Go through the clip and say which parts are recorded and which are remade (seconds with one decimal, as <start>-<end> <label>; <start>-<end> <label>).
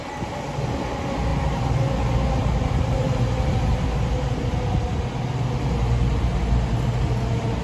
0.0-7.6 recorded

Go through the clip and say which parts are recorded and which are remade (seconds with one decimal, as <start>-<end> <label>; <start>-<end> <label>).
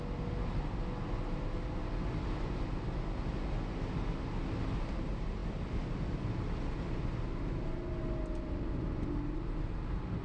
0.0-10.2 recorded